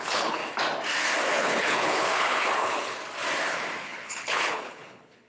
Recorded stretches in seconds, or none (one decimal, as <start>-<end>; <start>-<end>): 0.4-1.3; 3.0-3.8